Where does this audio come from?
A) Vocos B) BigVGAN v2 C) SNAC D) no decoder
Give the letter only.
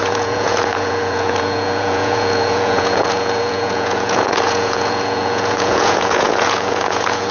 A